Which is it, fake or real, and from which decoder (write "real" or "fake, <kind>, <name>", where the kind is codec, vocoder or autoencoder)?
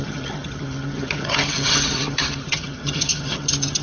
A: fake, vocoder, HiFi-GAN